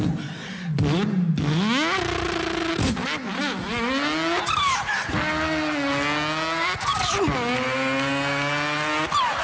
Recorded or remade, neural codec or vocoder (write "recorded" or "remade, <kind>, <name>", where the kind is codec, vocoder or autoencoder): recorded